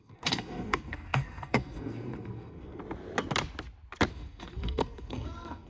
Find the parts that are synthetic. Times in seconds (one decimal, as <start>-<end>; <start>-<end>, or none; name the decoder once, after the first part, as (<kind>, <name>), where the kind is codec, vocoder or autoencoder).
0.0-2.8 (codec, SNAC); 4.1-5.7